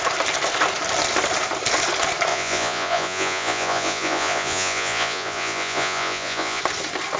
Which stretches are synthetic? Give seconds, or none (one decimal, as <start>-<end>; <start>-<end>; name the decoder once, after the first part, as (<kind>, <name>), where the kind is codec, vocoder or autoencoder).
2.3-6.6 (vocoder, Vocos)